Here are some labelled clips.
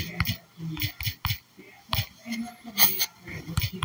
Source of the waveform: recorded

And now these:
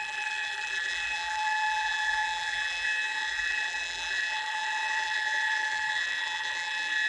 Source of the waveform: remade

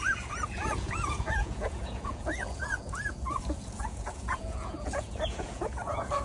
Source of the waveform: remade